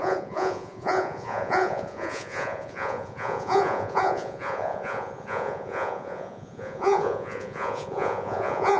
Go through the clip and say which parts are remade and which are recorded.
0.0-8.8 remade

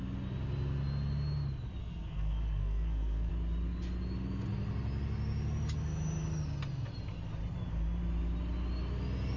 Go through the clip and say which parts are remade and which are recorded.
0.0-1.8 recorded; 1.8-3.3 remade; 3.3-9.4 recorded

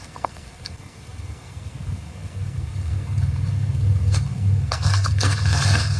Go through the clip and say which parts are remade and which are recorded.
0.0-6.0 remade

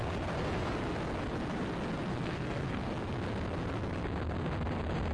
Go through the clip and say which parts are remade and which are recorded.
0.0-2.1 recorded; 2.1-2.9 remade; 2.9-5.1 recorded